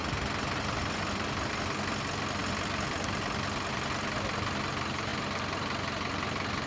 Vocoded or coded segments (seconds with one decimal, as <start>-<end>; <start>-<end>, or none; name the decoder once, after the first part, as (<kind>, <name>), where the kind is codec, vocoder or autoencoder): none